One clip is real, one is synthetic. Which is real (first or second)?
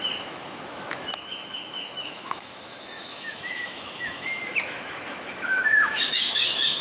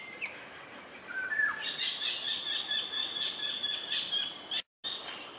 second